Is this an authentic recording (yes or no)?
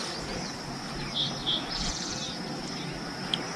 yes